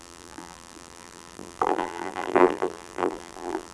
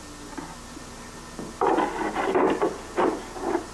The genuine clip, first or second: second